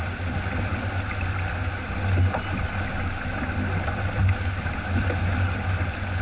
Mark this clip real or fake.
real